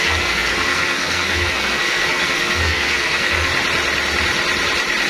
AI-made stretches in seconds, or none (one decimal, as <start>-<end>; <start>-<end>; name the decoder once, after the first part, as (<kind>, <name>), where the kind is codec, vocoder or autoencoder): 0.0-3.5 (codec, SNAC)